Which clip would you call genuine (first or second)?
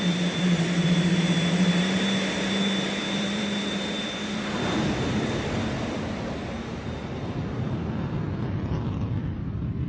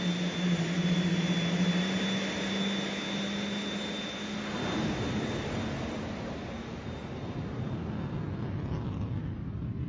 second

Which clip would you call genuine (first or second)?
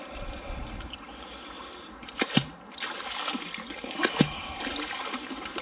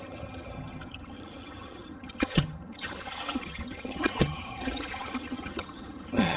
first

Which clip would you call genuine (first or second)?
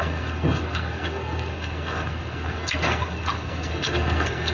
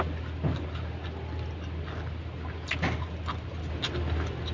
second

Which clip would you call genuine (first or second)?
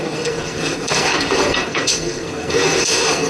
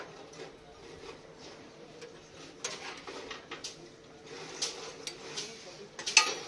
second